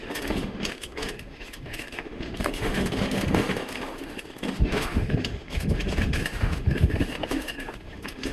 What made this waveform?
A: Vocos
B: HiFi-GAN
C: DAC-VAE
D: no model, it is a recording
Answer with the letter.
C